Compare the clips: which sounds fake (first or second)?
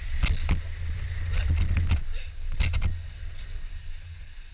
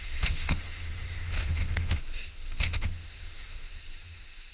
second